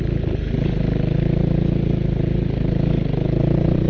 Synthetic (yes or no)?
no